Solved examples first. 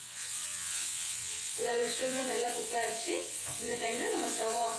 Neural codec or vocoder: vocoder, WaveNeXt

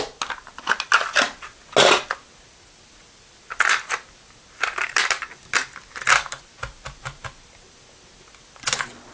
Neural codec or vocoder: none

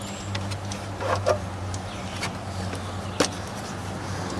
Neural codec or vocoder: none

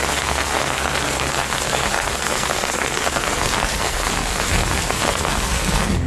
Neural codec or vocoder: codec, SNAC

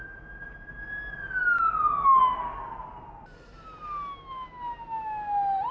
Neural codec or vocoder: none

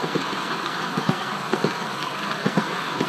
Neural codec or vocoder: codec, SNAC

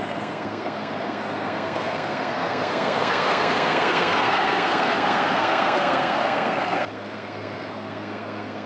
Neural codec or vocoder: codec, SNAC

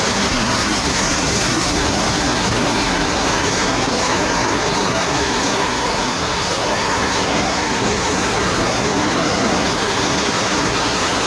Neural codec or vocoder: codec, SNAC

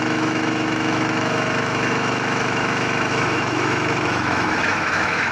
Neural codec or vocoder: autoencoder, DAC-VAE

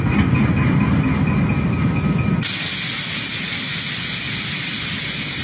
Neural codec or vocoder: none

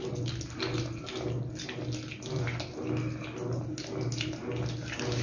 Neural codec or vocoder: none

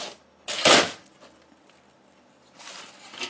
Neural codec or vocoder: none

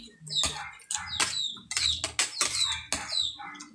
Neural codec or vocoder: none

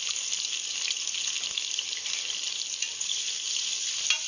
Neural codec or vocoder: none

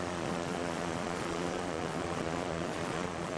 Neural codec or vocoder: vocoder, Vocos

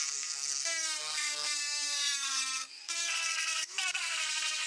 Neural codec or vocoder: codec, SNAC